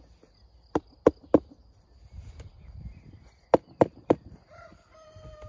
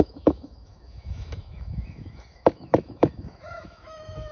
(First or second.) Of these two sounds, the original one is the first